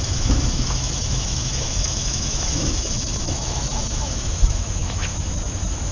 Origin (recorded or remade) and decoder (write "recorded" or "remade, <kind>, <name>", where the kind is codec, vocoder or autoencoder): remade, autoencoder, DAC-VAE